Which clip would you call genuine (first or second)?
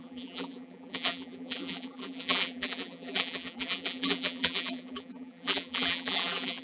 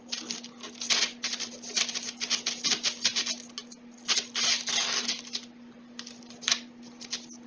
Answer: second